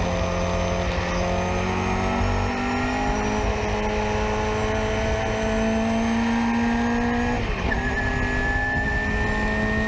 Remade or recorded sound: recorded